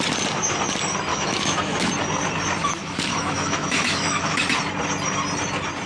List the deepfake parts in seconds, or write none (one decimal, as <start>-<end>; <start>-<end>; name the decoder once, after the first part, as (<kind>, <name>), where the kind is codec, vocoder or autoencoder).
1.1-1.9 (autoencoder, DAC-VAE); 2.6-4.4

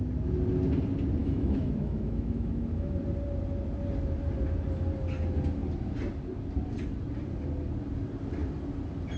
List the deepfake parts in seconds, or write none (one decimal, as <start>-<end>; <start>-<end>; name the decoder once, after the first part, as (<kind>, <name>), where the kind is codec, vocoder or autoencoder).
1.2-3.0 (autoencoder, DAC-VAE)

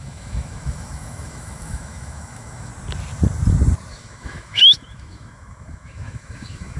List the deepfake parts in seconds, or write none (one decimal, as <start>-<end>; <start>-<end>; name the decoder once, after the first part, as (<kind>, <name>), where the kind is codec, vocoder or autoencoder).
0.0-2.7 (autoencoder, DAC-VAE); 3.9-6.8

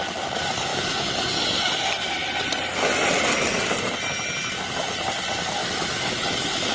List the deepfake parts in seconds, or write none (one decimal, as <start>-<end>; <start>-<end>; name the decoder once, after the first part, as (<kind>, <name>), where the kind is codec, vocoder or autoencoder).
0.7-1.2 (autoencoder, DAC-VAE); 5.6-6.7